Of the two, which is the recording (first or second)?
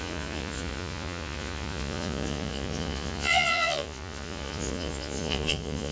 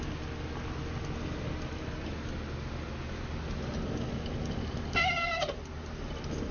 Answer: second